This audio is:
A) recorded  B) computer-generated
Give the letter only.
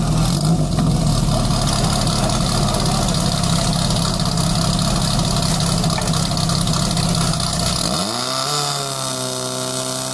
A